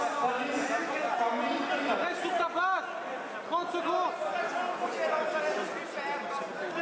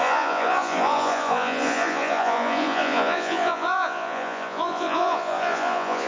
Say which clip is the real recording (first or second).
first